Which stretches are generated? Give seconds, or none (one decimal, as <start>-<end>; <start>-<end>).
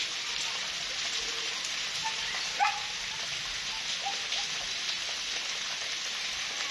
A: none